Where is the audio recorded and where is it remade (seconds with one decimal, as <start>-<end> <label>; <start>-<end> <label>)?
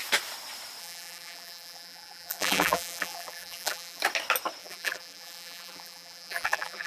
0.0-0.8 recorded; 0.8-4.0 remade; 4.0-4.6 recorded; 4.6-6.9 remade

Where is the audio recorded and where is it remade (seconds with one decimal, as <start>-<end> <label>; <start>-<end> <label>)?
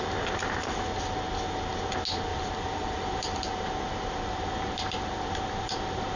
0.0-2.3 recorded; 2.3-6.2 remade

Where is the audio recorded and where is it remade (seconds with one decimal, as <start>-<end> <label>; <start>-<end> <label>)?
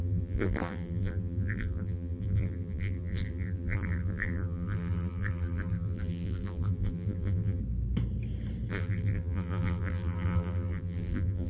0.0-7.6 remade; 7.6-8.7 recorded; 8.7-11.5 remade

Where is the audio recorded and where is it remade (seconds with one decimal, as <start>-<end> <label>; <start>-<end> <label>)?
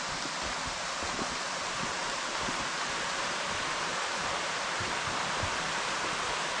0.0-2.0 recorded; 2.0-4.8 remade; 4.8-6.6 recorded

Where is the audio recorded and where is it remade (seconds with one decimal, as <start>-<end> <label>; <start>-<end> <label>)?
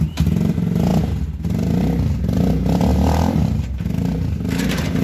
0.0-2.9 recorded; 2.9-3.4 remade; 3.4-5.0 recorded